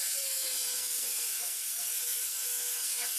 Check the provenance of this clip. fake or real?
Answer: fake